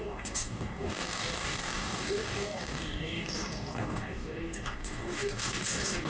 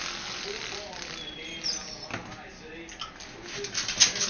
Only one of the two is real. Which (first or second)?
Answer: second